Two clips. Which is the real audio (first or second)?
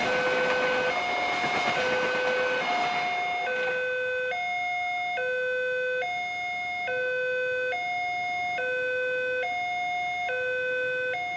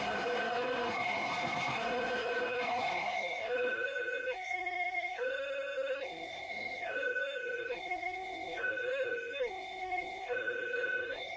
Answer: first